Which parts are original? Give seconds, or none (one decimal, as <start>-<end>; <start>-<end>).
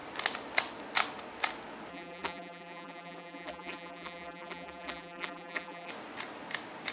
0.0-1.9; 5.9-6.9